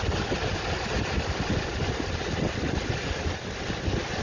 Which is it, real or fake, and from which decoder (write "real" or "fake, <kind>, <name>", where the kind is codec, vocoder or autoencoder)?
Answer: real